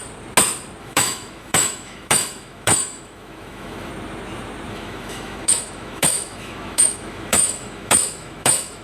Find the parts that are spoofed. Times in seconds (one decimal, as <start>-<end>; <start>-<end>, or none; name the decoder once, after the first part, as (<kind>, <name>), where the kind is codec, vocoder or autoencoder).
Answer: 0.8-3.9 (autoencoder, DAC-VAE); 4.7-8.8